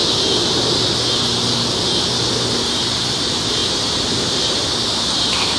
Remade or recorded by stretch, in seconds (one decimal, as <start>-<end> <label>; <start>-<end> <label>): 0.0-2.5 recorded; 2.5-5.6 remade